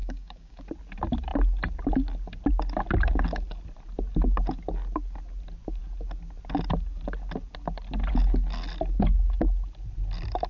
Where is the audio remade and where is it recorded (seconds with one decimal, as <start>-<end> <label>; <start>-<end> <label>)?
0.0-0.6 remade; 0.6-10.5 recorded